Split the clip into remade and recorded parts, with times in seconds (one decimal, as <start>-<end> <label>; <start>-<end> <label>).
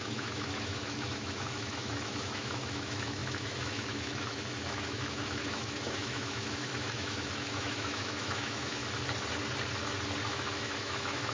0.0-8.8 remade; 8.8-10.3 recorded; 10.3-11.3 remade